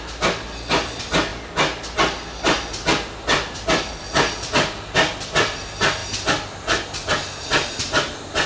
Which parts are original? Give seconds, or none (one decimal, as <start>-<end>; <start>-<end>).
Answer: 0.0-8.5

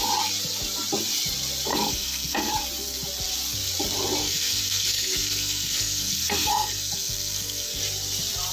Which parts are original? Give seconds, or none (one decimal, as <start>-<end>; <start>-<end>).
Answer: 0.0-1.7; 2.5-4.2; 7.8-8.5

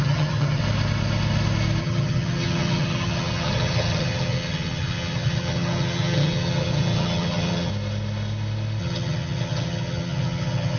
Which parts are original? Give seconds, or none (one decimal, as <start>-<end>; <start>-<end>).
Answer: 0.6-1.8; 7.7-8.8

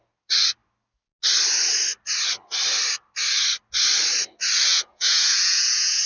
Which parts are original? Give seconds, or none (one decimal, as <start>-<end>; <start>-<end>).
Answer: 0.0-4.7